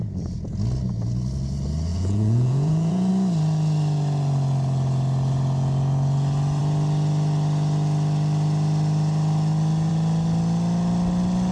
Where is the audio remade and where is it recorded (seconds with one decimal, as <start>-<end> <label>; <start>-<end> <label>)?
0.0-1.9 recorded; 1.9-3.1 remade; 3.1-11.5 recorded